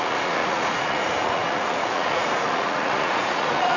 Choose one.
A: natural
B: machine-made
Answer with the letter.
B